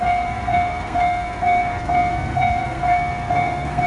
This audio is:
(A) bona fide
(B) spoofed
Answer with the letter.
B